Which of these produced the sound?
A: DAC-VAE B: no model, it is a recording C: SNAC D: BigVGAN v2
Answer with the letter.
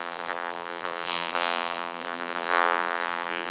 D